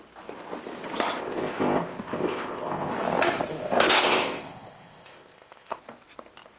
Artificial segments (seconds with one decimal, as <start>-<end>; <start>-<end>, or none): 1.2-2.9; 3.6-5.8